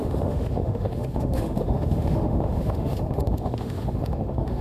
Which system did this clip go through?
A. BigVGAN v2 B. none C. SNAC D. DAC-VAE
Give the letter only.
D